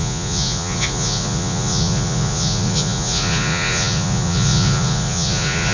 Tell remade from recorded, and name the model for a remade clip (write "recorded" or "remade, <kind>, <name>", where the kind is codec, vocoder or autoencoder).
remade, vocoder, Vocos